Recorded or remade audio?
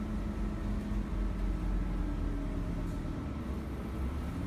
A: recorded